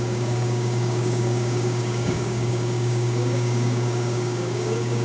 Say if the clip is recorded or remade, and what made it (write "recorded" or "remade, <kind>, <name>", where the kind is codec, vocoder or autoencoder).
remade, codec, DAC